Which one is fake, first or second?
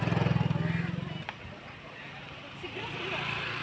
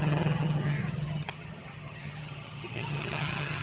second